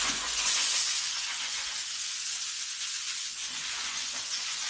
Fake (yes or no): yes